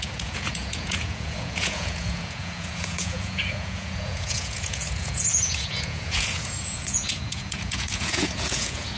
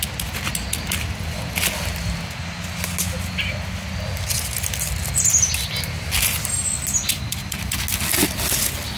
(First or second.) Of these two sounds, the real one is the second